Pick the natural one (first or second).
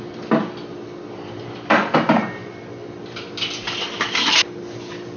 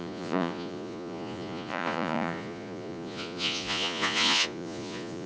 first